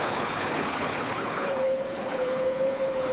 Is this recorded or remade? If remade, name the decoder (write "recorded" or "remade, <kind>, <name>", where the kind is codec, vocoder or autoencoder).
remade, codec, HILCodec